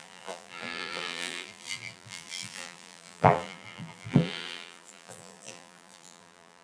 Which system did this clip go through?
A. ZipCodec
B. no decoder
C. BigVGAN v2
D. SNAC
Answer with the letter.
C